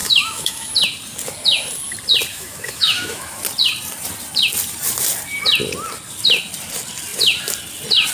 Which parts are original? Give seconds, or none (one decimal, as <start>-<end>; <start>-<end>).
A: 0.7-2.3; 3.4-8.1